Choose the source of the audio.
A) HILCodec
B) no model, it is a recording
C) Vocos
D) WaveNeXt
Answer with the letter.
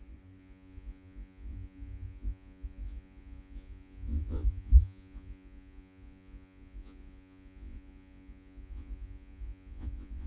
C